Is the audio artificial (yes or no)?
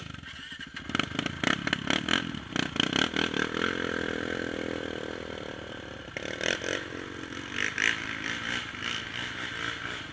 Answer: no